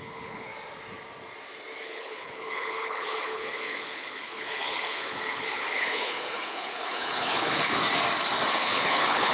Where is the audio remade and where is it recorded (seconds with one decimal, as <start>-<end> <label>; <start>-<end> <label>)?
0.0-0.5 remade; 0.5-1.8 recorded; 1.8-7.8 remade; 7.8-8.5 recorded; 8.5-9.3 remade